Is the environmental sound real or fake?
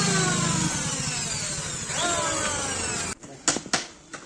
real